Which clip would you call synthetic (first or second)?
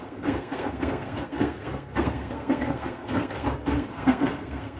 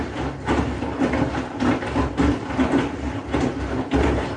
first